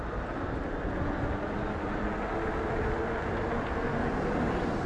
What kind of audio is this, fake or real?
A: real